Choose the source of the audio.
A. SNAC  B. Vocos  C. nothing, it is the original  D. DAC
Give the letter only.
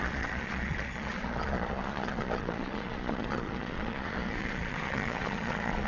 B